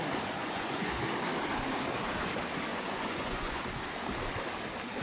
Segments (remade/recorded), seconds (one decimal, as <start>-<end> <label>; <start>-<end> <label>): 0.0-0.4 recorded; 0.4-0.9 remade; 0.9-2.7 recorded; 2.7-3.6 remade; 3.6-5.0 recorded